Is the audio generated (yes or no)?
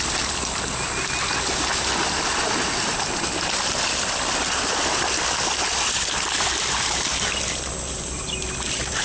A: no